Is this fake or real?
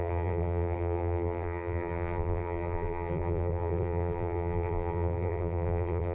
fake